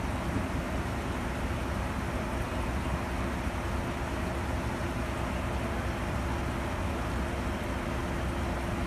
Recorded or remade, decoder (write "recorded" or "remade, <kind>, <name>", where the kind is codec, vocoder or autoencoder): recorded